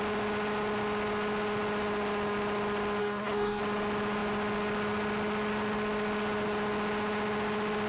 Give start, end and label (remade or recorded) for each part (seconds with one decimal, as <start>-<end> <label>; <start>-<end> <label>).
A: 0.0-3.0 recorded; 3.0-3.6 remade; 3.6-7.9 recorded